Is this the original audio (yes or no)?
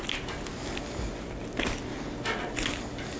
yes